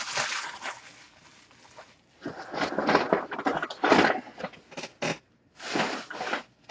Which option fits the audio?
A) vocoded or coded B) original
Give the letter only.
B